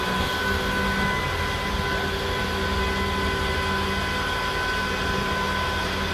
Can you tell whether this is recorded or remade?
recorded